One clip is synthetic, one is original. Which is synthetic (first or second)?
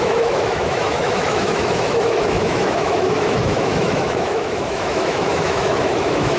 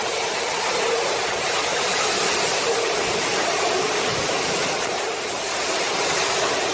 first